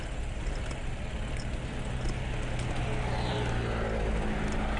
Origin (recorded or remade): recorded